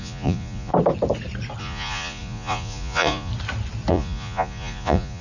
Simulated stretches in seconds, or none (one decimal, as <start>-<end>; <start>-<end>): 0.0-0.7; 1.6-3.3; 3.9-5.2